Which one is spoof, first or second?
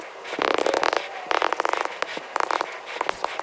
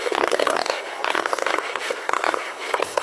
second